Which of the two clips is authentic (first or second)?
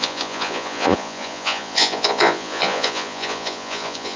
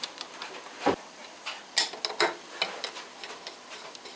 second